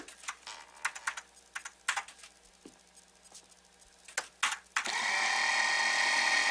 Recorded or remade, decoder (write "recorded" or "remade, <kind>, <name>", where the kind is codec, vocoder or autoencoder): recorded